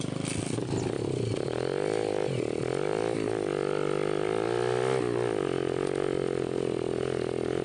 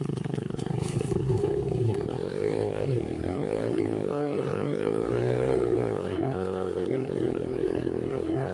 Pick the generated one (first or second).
second